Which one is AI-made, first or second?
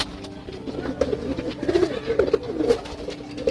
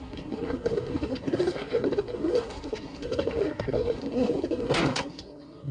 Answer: second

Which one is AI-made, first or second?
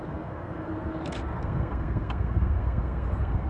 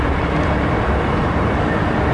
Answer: first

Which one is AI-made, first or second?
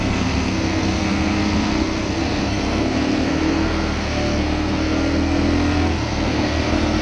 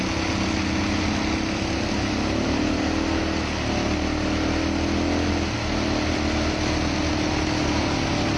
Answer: first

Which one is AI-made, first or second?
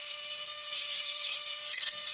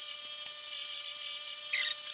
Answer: first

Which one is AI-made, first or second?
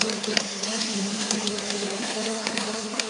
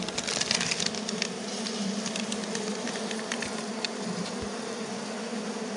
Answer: first